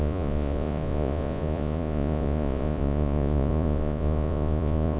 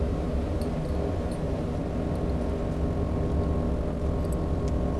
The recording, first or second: second